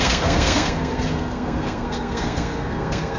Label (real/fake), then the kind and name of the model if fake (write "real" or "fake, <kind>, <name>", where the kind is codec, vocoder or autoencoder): fake, codec, SNAC